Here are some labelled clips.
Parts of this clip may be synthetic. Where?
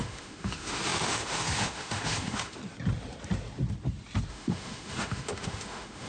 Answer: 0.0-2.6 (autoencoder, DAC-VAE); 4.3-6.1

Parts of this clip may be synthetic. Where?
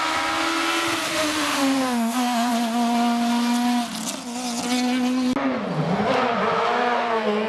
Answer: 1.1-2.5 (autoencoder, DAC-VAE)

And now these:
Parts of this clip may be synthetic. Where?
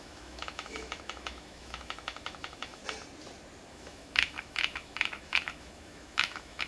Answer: 0.0-2.8 (autoencoder, DAC-VAE); 3.7-6.7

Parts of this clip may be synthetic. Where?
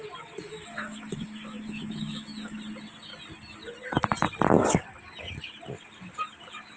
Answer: 0.4-2.6 (autoencoder, DAC-VAE)